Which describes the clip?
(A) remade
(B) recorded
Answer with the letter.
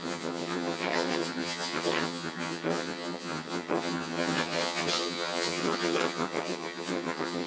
A